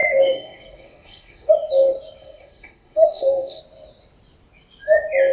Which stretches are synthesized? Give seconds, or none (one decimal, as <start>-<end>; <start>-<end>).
0.0-1.5; 2.2-3.6